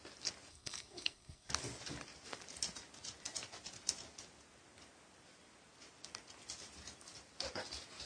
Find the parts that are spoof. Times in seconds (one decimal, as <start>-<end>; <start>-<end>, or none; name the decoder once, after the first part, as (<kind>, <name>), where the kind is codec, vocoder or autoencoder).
0.5-1.5 (codec, SNAC)